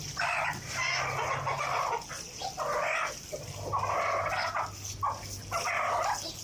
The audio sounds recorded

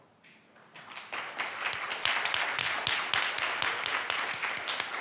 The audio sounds recorded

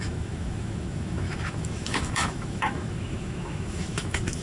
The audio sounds remade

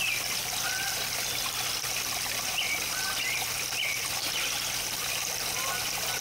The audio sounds recorded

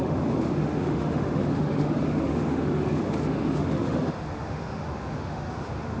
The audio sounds remade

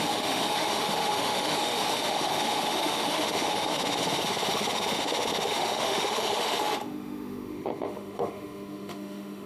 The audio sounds remade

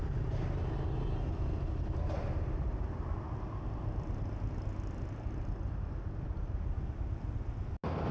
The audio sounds recorded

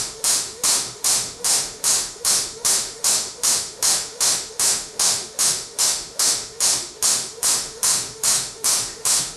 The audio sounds remade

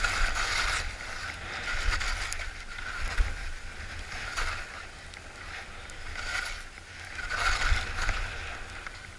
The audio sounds recorded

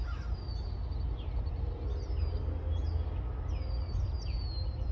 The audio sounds recorded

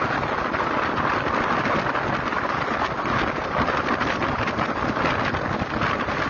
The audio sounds recorded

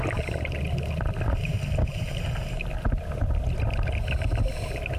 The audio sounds recorded